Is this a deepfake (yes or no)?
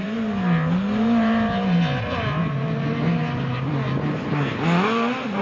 no